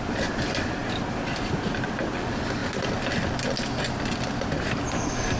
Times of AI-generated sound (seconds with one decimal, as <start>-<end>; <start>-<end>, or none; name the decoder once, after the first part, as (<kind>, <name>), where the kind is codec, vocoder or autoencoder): none